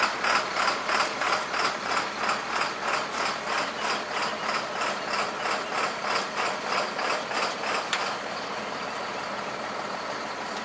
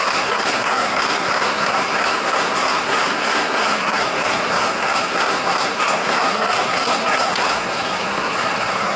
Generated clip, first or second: second